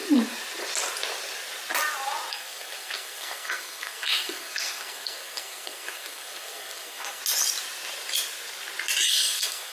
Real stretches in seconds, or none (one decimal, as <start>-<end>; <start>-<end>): 0.0-2.3; 7.2-9.1